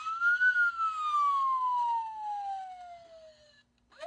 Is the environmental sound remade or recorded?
recorded